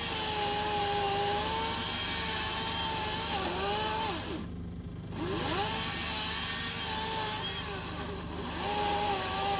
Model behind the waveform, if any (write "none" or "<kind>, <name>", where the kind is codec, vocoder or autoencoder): none